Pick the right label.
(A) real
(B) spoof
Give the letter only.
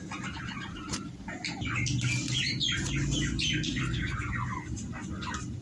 A